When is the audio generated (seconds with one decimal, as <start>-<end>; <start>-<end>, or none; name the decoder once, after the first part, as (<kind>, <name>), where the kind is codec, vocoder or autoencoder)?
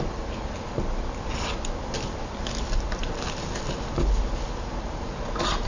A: none